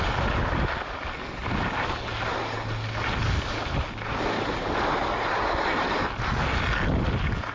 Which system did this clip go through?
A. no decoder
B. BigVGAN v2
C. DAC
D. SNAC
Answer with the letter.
A